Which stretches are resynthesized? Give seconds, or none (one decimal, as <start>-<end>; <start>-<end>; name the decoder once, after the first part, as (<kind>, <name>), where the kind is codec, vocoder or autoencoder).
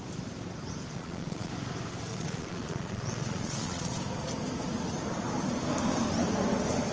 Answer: 0.9-1.5 (vocoder, Vocos); 2.1-3.9